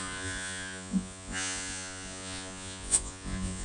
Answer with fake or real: fake